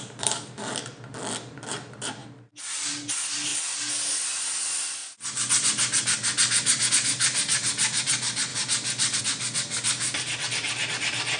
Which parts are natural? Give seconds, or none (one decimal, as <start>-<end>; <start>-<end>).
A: 2.2-2.8; 3.5-4.1; 5.0-6.9; 8.5-9.2